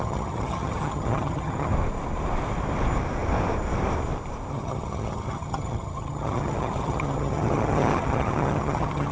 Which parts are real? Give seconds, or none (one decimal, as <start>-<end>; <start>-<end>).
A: 1.7-4.5